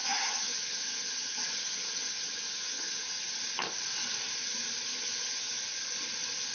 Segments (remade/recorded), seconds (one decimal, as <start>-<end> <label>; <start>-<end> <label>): 0.0-3.3 remade; 3.3-4.9 recorded; 4.9-5.5 remade; 5.5-6.5 recorded